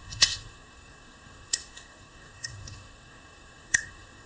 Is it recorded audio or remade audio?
remade